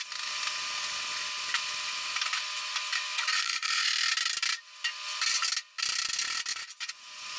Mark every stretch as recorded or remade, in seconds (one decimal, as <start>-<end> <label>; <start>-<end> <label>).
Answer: 0.0-3.1 recorded; 3.1-3.9 remade; 3.9-6.5 recorded; 6.5-7.4 remade